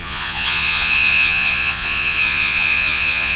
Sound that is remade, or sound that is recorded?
remade